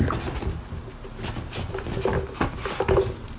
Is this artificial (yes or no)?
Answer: no